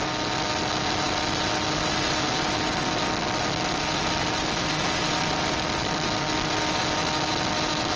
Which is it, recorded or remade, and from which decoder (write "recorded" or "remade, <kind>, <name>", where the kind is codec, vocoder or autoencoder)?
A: recorded